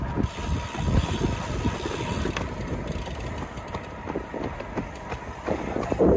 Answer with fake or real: real